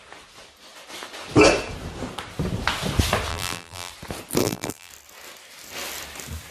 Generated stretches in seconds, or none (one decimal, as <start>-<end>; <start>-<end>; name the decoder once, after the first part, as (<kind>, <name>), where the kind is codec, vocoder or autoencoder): 3.3-3.9 (vocoder, BigVGAN v2); 4.4-4.9